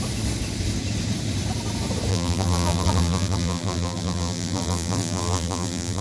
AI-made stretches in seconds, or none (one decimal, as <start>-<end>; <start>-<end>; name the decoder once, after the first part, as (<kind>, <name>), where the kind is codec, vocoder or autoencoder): 2.1-6.0 (vocoder, BigVGAN v2)